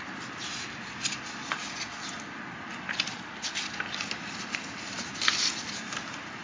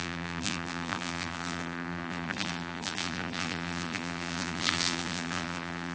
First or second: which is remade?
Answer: second